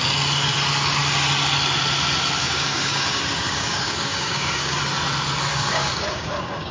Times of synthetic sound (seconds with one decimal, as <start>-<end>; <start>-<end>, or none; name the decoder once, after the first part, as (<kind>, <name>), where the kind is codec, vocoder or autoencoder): 2.4-4.8 (codec, DAC); 5.5-6.7